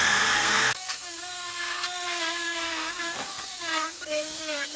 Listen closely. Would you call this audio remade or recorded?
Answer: remade